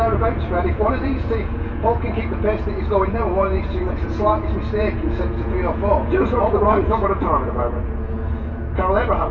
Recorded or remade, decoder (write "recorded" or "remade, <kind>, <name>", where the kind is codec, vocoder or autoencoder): remade, vocoder, Vocos